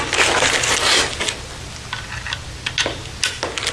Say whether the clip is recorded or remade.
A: recorded